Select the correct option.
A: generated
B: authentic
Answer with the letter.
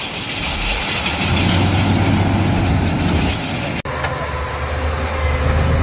B